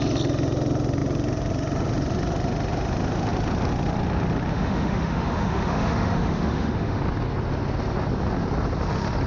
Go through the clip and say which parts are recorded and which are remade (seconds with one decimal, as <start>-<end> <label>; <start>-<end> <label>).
0.0-4.5 recorded; 4.5-7.0 remade; 7.0-9.3 recorded